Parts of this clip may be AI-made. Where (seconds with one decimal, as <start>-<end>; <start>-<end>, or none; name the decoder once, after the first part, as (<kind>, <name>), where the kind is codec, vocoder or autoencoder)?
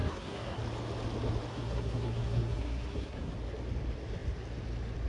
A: 0.0-0.6 (codec, SNAC); 1.5-3.3